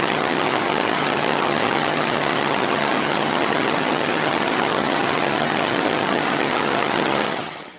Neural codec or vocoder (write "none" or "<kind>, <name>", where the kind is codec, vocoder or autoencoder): vocoder, HiFi-GAN